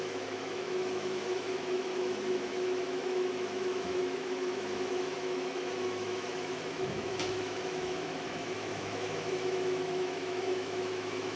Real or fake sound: fake